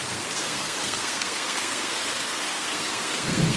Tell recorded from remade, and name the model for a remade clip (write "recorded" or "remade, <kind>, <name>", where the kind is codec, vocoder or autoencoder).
remade, codec, SNAC